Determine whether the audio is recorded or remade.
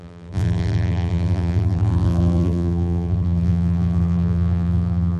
remade